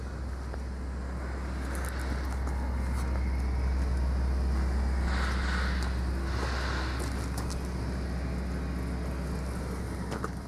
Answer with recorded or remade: recorded